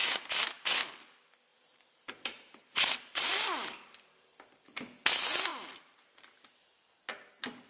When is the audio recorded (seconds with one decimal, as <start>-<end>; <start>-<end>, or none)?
0.0-1.5; 3.3-5.5; 6.0-7.7